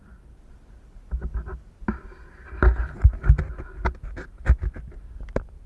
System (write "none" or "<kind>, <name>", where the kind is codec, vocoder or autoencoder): none